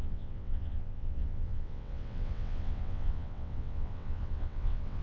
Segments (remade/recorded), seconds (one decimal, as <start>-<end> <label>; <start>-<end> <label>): 0.0-5.0 remade